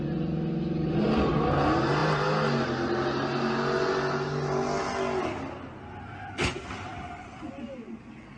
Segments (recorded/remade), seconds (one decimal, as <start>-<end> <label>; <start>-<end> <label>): 0.0-8.4 recorded